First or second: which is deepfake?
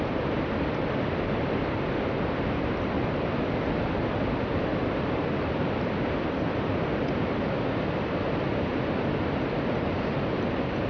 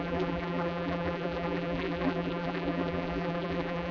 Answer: second